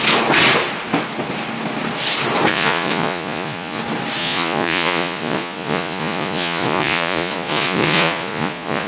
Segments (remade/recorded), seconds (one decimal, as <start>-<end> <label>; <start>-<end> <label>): 0.0-2.5 recorded; 2.5-3.8 remade; 3.8-4.2 recorded; 4.2-8.9 remade